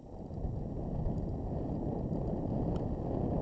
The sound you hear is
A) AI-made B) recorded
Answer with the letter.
B